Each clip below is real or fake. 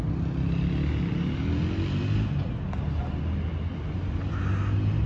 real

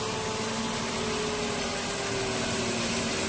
real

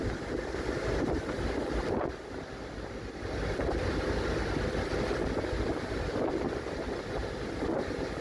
real